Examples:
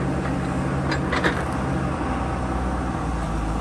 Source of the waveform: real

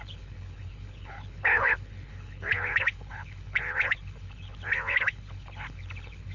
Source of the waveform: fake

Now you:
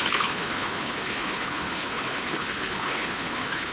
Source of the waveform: fake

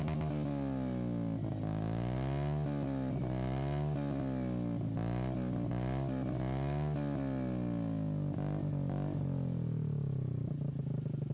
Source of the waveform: real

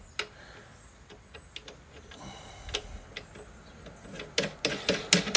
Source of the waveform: real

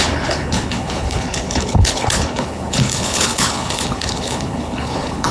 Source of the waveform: fake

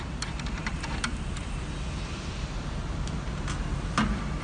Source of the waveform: real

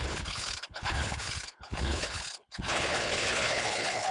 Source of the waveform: fake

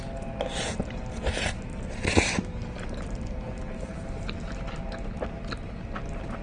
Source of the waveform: real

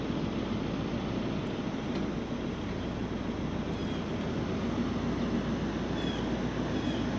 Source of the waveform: real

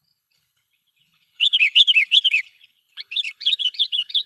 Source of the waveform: fake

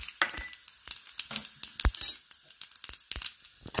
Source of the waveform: real